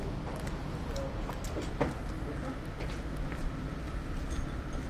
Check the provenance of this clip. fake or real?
real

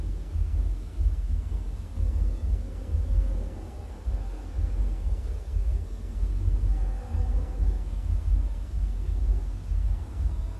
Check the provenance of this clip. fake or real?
fake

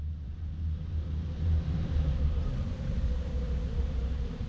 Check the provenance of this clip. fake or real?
fake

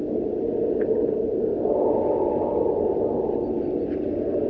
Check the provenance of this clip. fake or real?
real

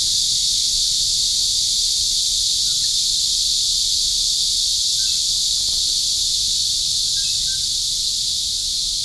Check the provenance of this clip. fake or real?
real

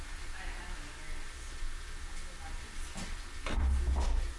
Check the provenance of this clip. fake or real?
real